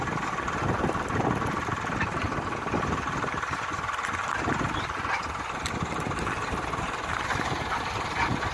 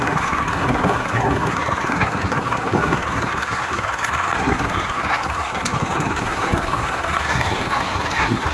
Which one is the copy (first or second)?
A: second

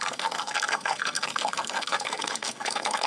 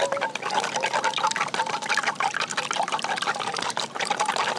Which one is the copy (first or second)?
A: first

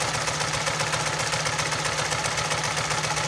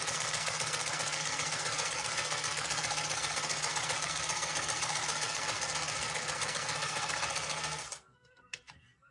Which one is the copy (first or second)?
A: second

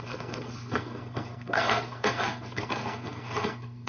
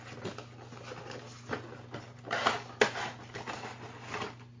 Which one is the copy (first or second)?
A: first